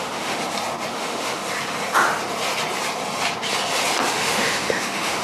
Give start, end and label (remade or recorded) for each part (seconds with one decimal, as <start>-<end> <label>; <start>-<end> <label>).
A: 0.0-0.4 remade; 0.4-0.9 recorded; 0.9-1.4 remade; 1.4-4.1 recorded; 4.1-5.2 remade